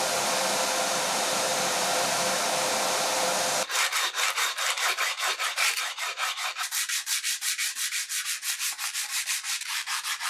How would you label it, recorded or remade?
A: remade